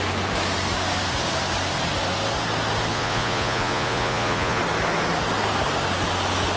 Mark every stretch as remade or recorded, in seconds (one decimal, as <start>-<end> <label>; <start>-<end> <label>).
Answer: 0.0-2.9 recorded; 2.9-4.6 remade; 4.6-6.6 recorded